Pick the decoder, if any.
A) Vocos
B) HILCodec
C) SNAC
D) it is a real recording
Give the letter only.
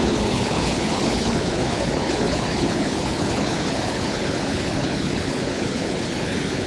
B